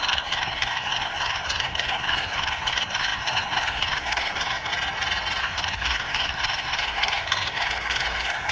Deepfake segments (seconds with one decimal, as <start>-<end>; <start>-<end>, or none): 0.0-4.7; 5.4-8.5